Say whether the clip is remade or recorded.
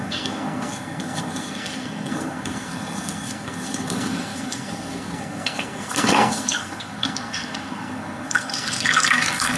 remade